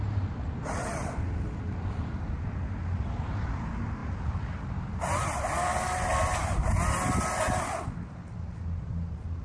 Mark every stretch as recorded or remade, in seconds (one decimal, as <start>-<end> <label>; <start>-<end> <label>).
0.0-9.4 recorded

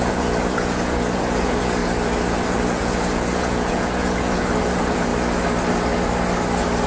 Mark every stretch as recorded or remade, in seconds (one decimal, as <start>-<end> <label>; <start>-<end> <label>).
0.0-1.8 remade; 1.8-2.3 recorded; 2.3-5.1 remade; 5.1-6.9 recorded

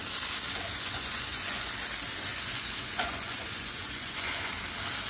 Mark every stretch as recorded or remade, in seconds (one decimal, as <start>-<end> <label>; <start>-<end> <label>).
0.0-0.7 recorded; 0.7-1.7 remade; 1.7-2.3 recorded; 2.3-4.6 remade; 4.6-5.1 recorded

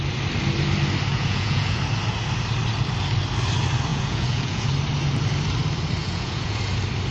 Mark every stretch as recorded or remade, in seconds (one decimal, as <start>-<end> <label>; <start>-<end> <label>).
0.0-1.1 recorded; 1.1-1.8 remade; 1.8-3.9 recorded; 3.9-4.7 remade; 4.7-6.0 recorded; 6.0-6.6 remade; 6.6-7.1 recorded